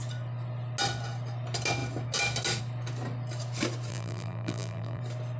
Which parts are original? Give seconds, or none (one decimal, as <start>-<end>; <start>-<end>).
0.0-3.9; 5.0-5.4